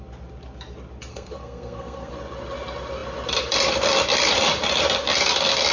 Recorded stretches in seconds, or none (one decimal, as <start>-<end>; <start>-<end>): 0.0-1.1; 2.1-5.7